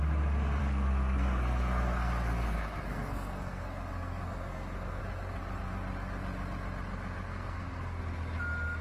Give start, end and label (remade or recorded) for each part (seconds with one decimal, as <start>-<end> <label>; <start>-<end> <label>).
0.0-0.6 recorded; 0.6-5.0 remade; 5.0-7.3 recorded; 7.3-8.0 remade; 8.0-8.8 recorded